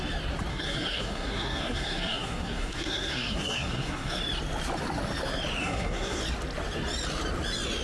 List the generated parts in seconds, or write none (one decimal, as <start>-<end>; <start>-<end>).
0.5-4.2; 5.6-6.2